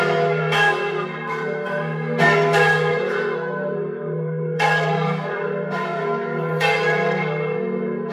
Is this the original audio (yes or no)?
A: no